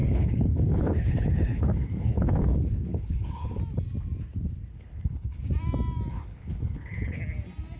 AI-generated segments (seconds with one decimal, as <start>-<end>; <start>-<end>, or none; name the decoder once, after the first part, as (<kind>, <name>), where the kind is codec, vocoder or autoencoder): 0.0-3.6 (codec, HILCodec); 4.7-5.4; 6.1-7.2